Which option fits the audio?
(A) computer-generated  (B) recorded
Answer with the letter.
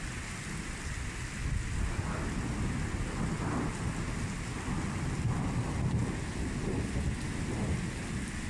B